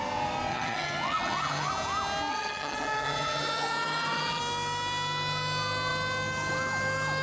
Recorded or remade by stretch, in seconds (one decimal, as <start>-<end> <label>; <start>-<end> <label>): 0.0-0.5 recorded; 0.5-1.7 remade; 1.7-2.3 recorded; 2.3-4.4 remade; 4.4-7.2 recorded